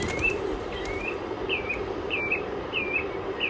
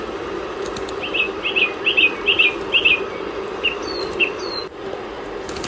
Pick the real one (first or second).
second